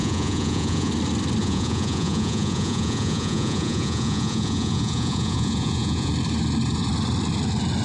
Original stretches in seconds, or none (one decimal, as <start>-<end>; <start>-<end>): 0.9-1.4; 6.1-7.8